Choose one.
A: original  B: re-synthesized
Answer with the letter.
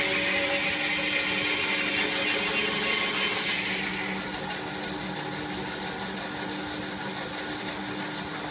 A